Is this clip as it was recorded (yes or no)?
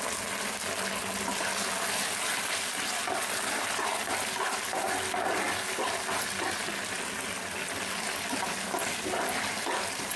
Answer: yes